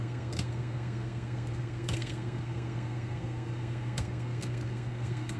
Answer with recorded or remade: remade